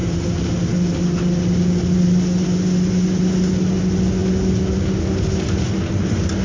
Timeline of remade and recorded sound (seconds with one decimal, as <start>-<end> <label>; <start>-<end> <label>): 0.0-6.4 recorded